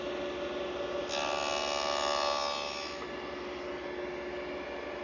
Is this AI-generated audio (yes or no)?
no